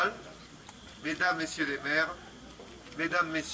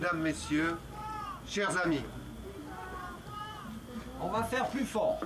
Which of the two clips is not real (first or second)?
first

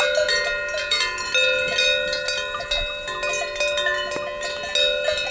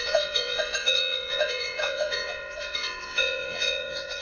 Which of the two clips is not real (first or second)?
second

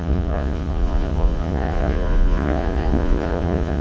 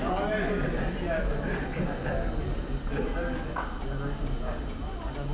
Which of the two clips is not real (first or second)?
first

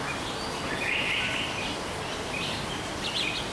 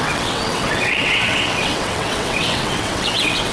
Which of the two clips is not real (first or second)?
second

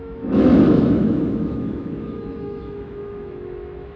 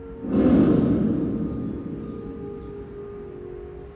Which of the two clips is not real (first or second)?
first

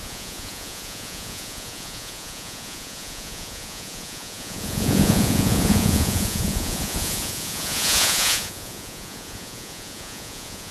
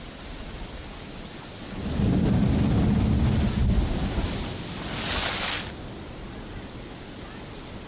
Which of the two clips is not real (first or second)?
first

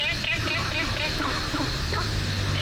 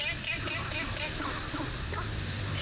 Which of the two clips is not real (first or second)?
second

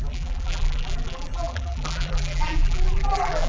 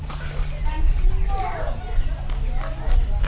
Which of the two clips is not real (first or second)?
first